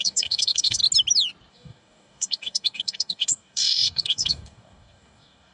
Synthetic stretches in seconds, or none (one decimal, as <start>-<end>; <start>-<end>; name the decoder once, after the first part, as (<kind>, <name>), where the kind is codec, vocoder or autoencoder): 0.0-0.8 (codec, DAC); 1.5-5.5